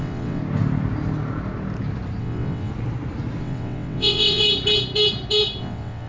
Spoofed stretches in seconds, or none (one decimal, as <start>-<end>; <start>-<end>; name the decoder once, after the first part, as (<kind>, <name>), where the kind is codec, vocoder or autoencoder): 0.0-0.4 (vocoder, WaveNeXt); 2.2-2.7; 3.4-4.4; 5.6-6.1